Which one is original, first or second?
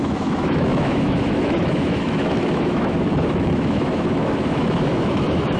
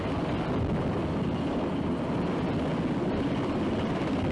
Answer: second